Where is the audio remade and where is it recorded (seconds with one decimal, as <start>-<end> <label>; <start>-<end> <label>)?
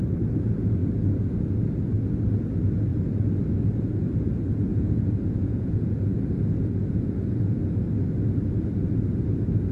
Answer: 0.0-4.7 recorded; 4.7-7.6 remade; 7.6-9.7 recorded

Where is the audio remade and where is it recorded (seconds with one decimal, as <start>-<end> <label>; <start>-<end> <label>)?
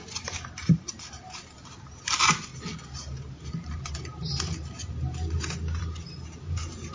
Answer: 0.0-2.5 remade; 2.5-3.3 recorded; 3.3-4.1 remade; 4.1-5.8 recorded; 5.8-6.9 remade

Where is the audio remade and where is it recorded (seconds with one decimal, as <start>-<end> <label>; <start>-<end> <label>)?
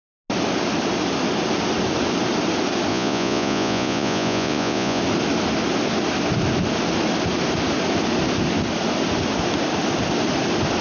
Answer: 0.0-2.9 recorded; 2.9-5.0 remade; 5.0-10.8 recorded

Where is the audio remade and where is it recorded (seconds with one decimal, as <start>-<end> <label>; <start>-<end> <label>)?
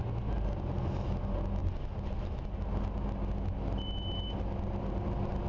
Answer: 0.0-5.5 recorded